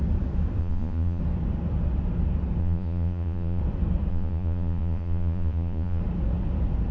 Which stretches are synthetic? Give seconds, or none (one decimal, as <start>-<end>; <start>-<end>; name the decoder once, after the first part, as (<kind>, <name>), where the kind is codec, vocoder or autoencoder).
0.6-1.2 (vocoder, Vocos); 2.6-3.6; 4.1-6.0